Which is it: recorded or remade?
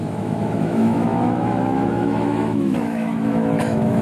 remade